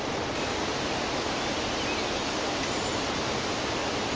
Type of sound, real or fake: real